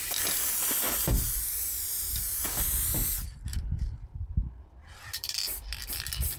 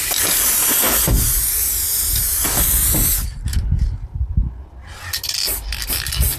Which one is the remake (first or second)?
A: first